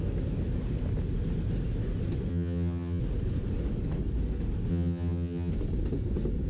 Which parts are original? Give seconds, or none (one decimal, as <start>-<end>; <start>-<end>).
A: 0.0-2.3; 3.0-4.7; 5.5-6.5